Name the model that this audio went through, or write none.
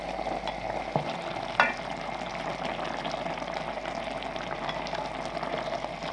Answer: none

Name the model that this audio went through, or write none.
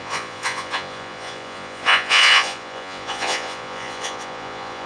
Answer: vocoder, Vocos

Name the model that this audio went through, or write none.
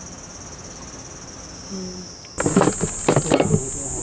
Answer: none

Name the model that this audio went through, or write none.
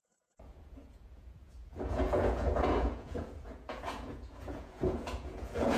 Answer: vocoder, Vocos